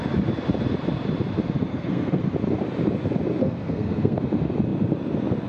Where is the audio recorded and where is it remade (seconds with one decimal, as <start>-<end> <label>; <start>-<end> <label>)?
0.0-1.7 recorded; 1.7-2.2 remade; 2.2-3.4 recorded; 3.4-4.2 remade; 4.2-5.5 recorded